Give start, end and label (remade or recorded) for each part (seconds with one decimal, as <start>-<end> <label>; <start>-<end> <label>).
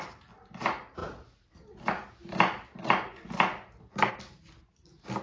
0.0-5.2 recorded